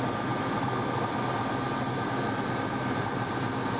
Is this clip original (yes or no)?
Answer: yes